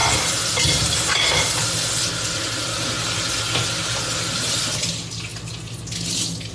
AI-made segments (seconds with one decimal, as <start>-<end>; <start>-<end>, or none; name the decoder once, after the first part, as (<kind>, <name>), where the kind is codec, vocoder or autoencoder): none